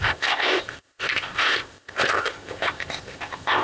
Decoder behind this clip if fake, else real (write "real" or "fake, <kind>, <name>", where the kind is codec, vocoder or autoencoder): fake, codec, ZipCodec